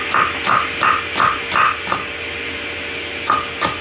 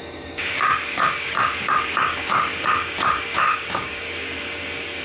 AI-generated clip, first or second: second